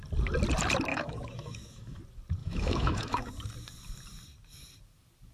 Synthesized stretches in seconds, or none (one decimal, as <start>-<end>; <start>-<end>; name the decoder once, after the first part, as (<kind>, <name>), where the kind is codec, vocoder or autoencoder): 0.9-2.0 (autoencoder, DAC-VAE); 2.4-3.3

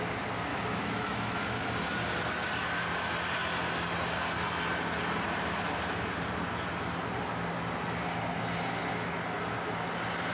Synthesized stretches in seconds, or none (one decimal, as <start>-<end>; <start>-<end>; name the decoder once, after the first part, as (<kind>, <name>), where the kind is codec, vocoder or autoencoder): 0.5-1.6 (autoencoder, DAC-VAE)

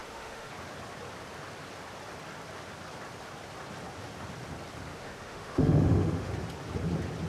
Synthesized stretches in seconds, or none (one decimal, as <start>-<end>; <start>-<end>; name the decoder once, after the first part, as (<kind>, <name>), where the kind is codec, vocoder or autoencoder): 0.0-0.5 (autoencoder, DAC-VAE); 4.9-6.3

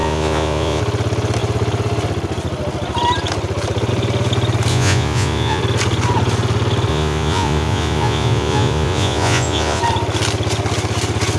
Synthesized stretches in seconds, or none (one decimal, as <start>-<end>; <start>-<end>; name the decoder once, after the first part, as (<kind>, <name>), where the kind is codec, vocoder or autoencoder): 0.0-0.8 (vocoder, Vocos); 4.7-5.6; 6.9-9.8

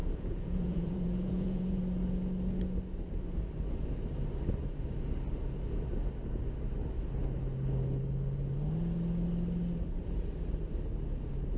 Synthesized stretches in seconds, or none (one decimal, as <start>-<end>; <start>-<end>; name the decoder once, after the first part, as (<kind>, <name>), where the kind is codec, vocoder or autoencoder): 0.0-1.8 (vocoder, Vocos)